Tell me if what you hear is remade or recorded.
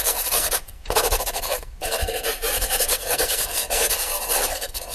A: remade